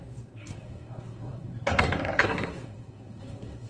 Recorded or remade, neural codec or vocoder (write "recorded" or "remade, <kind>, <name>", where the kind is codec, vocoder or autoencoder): remade, codec, SNAC